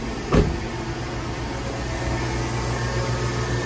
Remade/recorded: recorded